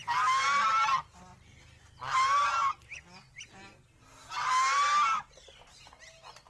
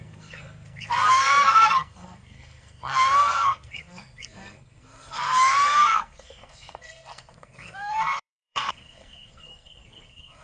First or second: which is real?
first